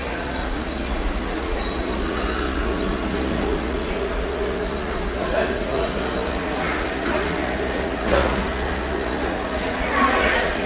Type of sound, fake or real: fake